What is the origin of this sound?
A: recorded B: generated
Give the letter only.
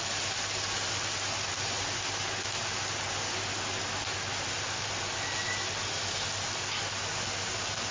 A